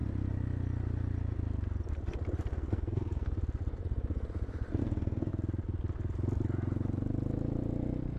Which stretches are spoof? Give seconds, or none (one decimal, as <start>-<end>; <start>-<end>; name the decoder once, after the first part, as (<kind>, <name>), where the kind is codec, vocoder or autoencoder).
2.5-3.3 (codec, SNAC); 4.8-5.3

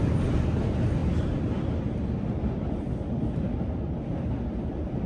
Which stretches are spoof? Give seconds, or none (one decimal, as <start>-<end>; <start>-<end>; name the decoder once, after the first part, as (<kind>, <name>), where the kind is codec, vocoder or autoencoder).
none